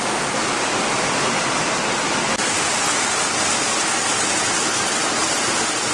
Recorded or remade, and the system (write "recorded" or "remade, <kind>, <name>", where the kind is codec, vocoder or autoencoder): recorded